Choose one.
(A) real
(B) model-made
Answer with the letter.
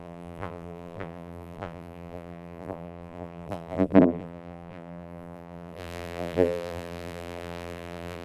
B